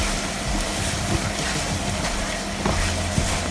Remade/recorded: recorded